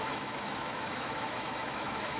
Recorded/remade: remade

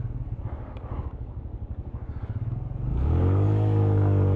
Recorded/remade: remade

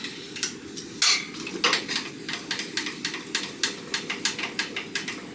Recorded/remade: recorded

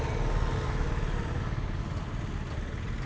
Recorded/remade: recorded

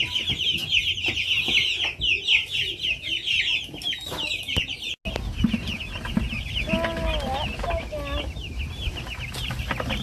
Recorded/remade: recorded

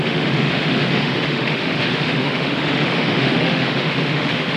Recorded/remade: remade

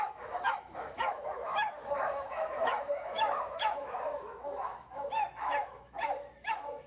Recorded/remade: remade